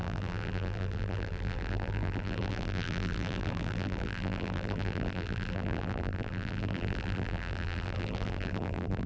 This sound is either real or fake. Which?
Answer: fake